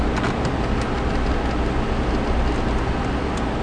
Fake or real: real